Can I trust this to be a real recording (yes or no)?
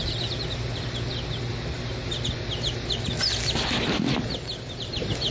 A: yes